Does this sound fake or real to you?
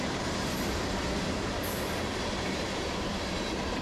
fake